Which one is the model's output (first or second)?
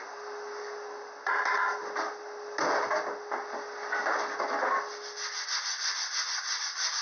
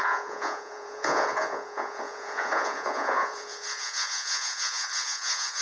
second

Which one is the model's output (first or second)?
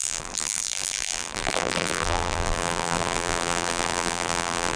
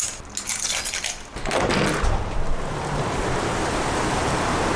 first